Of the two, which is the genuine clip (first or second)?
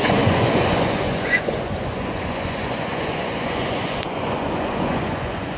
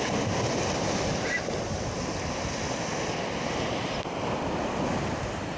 second